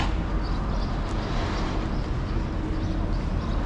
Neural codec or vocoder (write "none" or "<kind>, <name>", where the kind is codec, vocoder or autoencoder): none